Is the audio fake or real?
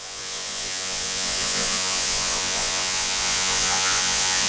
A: fake